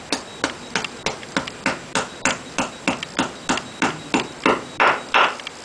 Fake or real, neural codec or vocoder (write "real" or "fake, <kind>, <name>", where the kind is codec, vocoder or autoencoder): real